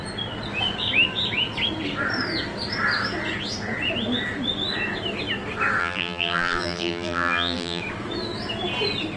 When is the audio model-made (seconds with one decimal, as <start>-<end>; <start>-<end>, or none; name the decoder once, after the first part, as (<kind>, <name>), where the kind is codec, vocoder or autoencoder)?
5.8-7.8 (vocoder, BigVGAN v2)